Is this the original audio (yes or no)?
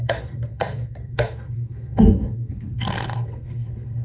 no